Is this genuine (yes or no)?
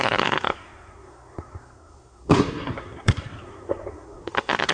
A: no